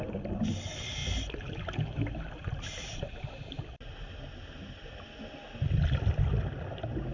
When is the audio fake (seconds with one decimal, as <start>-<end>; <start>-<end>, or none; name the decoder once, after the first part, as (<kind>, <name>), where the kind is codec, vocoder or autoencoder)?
none